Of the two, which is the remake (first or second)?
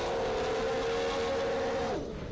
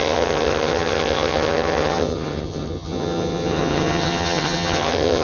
second